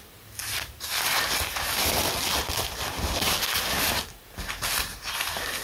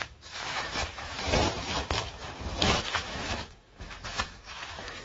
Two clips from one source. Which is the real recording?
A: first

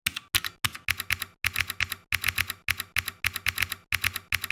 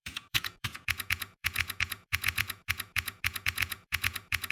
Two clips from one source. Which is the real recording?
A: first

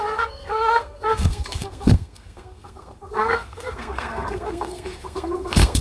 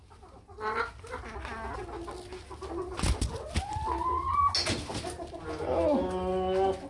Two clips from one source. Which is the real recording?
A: second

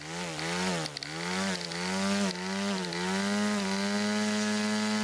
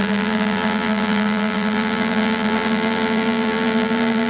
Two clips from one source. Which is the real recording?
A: first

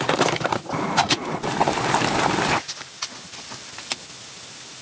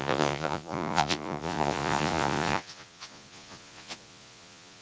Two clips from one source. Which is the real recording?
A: first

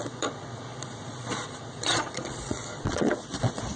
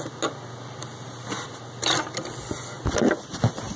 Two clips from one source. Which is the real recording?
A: second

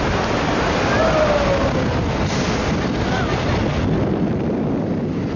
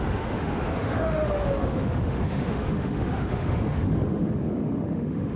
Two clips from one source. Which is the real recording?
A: first